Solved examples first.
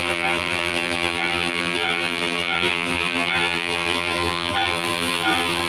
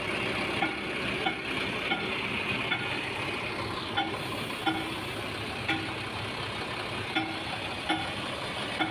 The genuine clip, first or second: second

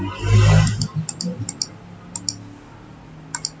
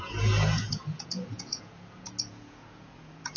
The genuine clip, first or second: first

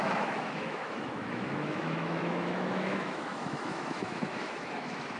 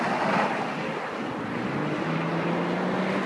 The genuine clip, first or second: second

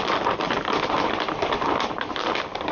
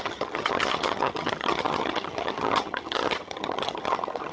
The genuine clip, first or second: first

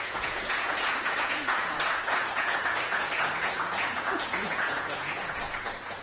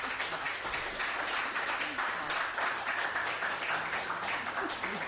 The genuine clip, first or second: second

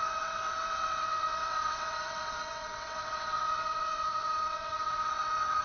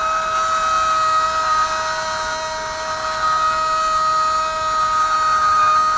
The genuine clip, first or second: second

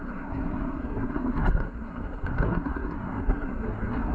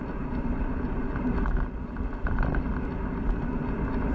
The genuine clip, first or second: second